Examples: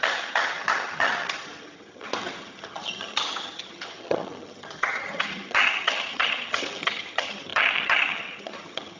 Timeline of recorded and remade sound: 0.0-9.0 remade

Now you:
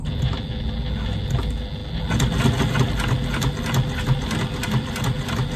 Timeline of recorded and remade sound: 0.0-5.6 recorded

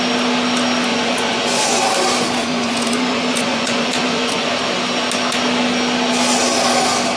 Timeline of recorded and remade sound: 0.0-0.9 recorded; 0.9-1.8 remade; 1.8-2.4 recorded; 2.4-4.5 remade; 4.5-7.2 recorded

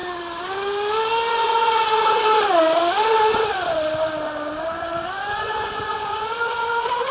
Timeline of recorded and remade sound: 0.0-1.3 recorded; 1.3-2.2 remade; 2.2-5.0 recorded; 5.0-7.1 remade

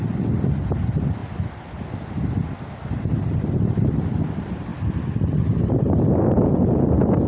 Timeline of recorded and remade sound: 0.0-7.3 recorded

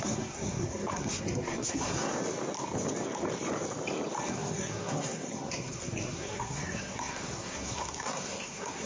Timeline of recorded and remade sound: 0.0-2.1 remade; 2.1-4.3 recorded; 4.3-8.9 remade

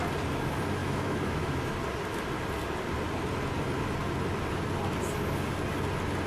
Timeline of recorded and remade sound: 0.0-0.8 recorded; 0.8-1.7 remade; 1.7-6.3 recorded